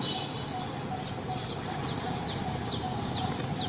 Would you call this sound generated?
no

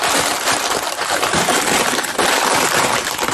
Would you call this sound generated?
yes